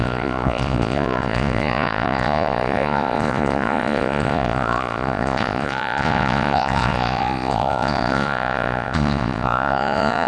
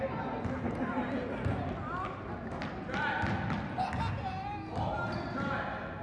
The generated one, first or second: first